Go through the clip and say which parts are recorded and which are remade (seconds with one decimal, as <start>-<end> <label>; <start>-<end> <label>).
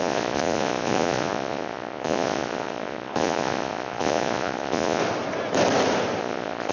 0.0-5.0 remade; 5.0-6.2 recorded; 6.2-6.7 remade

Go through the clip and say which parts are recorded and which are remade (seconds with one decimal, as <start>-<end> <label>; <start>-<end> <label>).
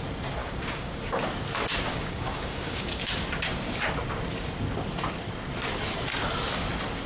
0.0-0.4 recorded; 0.4-1.2 remade; 1.2-1.9 recorded; 1.9-3.0 remade; 3.0-7.1 recorded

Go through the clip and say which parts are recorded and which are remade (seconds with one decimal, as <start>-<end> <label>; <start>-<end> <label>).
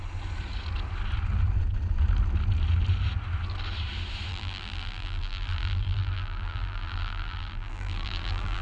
0.0-4.3 recorded; 4.3-8.6 remade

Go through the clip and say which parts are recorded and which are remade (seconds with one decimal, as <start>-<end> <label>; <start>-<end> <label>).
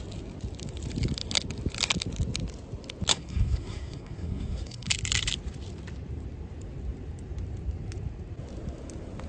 0.0-3.1 recorded; 3.1-4.9 remade; 4.9-9.3 recorded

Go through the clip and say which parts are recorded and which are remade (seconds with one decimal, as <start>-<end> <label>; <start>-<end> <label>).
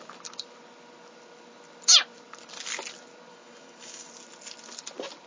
0.0-3.3 recorded; 3.3-4.1 remade; 4.1-5.3 recorded